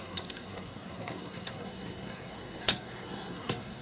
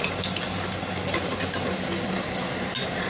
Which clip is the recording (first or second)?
second